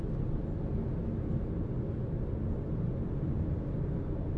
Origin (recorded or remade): recorded